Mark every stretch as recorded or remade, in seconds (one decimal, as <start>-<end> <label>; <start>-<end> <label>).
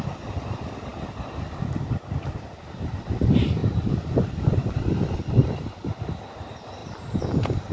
0.0-3.6 recorded; 3.6-4.1 remade; 4.1-7.7 recorded